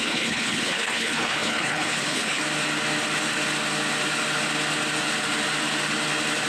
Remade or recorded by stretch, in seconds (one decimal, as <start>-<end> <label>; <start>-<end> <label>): 0.0-2.4 remade; 2.4-6.5 recorded